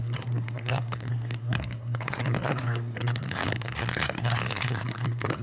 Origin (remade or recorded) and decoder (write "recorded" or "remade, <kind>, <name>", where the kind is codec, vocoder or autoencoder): remade, codec, SNAC